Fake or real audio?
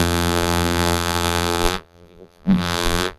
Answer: fake